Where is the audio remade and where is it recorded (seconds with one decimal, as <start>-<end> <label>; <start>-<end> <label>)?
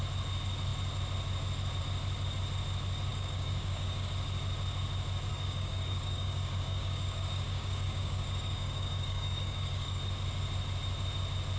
0.0-3.1 recorded; 3.1-4.1 remade; 4.1-5.3 recorded; 5.3-10.0 remade; 10.0-11.6 recorded